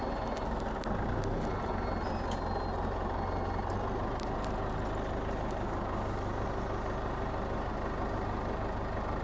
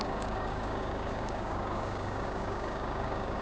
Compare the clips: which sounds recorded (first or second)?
first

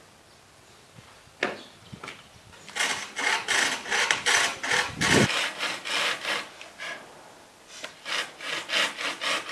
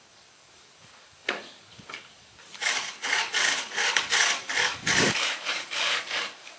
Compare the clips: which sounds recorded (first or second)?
first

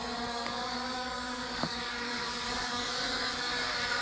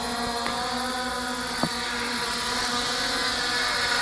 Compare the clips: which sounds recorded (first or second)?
second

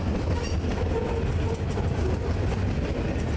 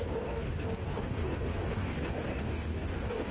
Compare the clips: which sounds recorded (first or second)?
first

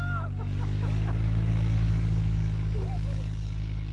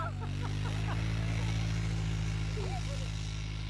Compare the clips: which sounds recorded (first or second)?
second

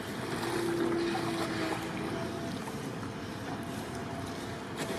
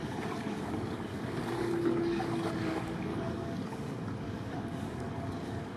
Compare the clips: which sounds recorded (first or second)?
first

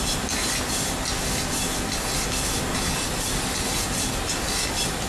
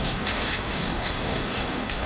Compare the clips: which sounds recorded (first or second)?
first